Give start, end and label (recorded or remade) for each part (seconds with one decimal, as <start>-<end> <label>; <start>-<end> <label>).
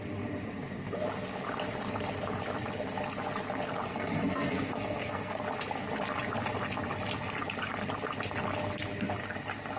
0.0-3.9 recorded; 3.9-5.4 remade; 5.4-9.8 recorded